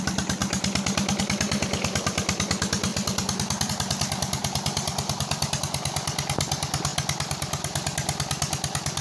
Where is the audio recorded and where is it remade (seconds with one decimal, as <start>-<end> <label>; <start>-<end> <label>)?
0.0-4.4 recorded; 4.4-5.6 remade; 5.6-9.0 recorded